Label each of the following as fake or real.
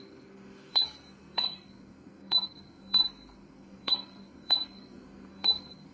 fake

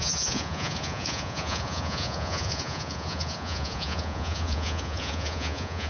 fake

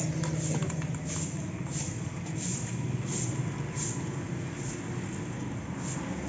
real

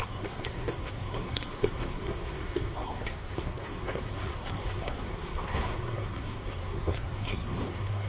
fake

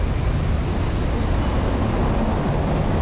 real